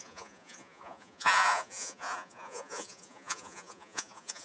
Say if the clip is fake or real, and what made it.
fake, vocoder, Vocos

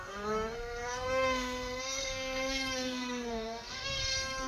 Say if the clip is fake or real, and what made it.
fake, codec, SNAC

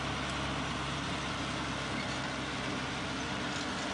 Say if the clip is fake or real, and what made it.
real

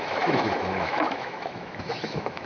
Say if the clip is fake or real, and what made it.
fake, autoencoder, DAC-VAE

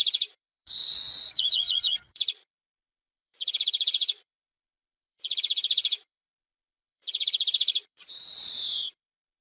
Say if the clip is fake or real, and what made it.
fake, vocoder, Vocos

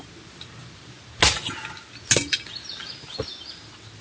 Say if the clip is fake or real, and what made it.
real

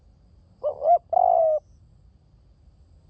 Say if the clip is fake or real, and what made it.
real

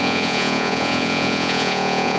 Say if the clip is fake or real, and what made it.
fake, vocoder, Vocos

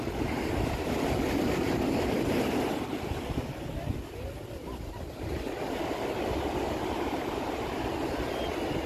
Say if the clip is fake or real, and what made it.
real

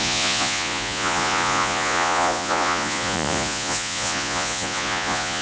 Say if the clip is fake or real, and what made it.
fake, vocoder, Vocos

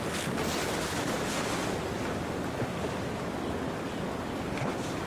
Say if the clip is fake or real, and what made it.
real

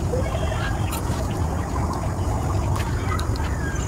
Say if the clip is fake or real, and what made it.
real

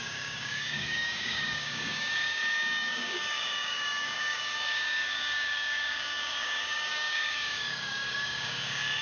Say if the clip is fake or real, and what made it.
fake, codec, DAC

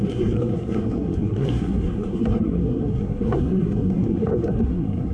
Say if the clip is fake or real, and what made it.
fake, codec, SNAC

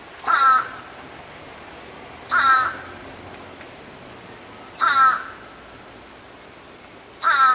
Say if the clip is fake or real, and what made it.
real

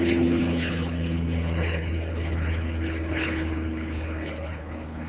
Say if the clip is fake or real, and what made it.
fake, codec, HILCodec